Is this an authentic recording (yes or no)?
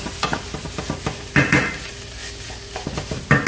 yes